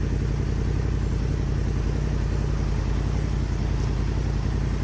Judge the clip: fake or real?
real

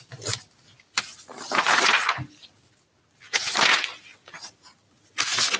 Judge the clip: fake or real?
real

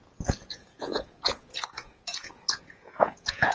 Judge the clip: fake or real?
fake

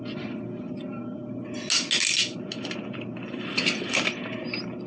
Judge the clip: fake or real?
real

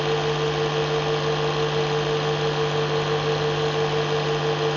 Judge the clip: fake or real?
real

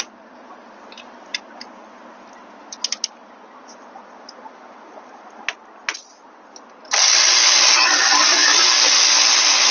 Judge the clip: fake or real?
real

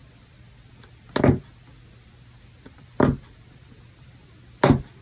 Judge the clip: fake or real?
real